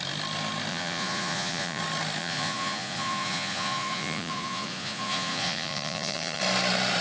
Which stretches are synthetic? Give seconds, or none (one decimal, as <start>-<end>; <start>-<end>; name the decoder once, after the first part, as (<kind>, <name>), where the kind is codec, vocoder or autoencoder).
0.7-1.8 (vocoder, Vocos); 2.2-6.4